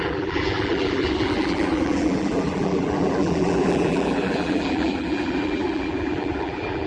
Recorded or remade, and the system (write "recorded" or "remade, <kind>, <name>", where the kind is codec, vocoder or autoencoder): remade, vocoder, BigVGAN v2